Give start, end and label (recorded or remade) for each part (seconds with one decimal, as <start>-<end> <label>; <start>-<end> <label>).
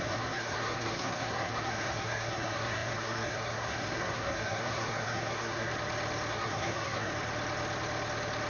0.0-5.7 remade; 5.7-6.3 recorded; 6.3-7.1 remade; 7.1-8.5 recorded